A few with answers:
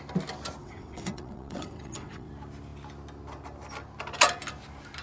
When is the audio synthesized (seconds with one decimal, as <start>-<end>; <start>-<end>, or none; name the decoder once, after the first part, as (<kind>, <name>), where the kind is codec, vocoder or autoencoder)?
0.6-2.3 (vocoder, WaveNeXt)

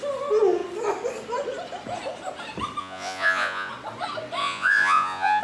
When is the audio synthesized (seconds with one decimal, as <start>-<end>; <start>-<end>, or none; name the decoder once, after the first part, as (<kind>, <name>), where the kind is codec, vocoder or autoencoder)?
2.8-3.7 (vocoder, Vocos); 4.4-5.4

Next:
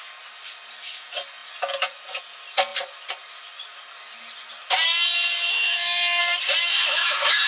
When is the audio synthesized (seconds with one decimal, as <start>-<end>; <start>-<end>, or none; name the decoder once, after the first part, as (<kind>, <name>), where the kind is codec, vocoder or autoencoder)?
5.5-6.2 (autoencoder, DAC-VAE); 6.7-7.5

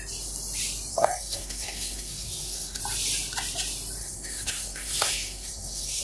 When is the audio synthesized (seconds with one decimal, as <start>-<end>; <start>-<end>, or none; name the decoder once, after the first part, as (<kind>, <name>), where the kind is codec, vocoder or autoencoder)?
0.9-2.8 (codec, SNAC); 4.0-6.0

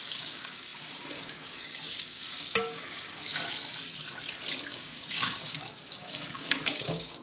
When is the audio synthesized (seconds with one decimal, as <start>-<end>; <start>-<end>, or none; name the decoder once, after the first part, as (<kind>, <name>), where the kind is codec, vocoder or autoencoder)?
0.0-3.3 (codec, DAC); 4.7-7.2